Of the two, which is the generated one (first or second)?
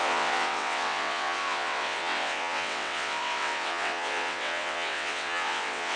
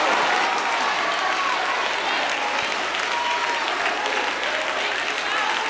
first